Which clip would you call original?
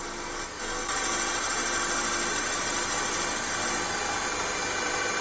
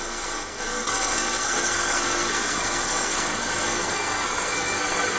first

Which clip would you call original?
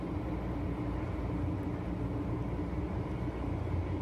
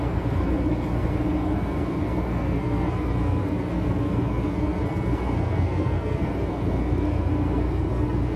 first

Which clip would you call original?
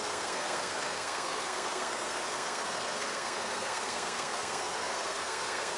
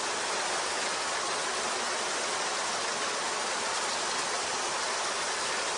second